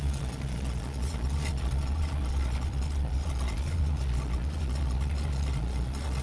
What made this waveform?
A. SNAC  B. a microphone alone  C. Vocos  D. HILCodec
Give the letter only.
C